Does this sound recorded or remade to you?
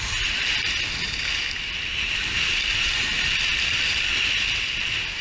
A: recorded